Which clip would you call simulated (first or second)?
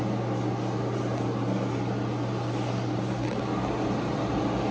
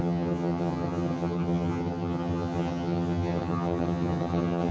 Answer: second